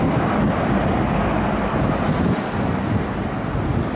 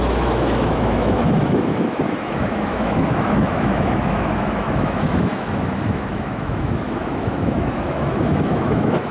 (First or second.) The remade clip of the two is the second